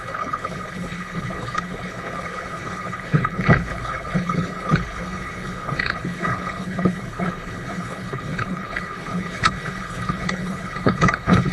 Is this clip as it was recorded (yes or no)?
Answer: no